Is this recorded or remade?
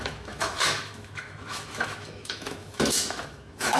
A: remade